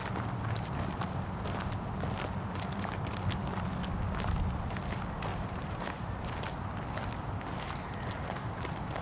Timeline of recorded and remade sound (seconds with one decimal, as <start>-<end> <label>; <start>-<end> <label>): 0.0-5.3 recorded; 5.3-6.1 remade; 6.1-9.0 recorded